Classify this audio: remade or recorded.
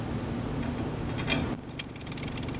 recorded